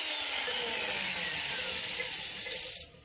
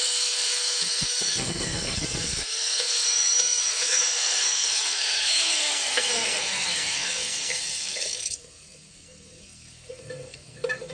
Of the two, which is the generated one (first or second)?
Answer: second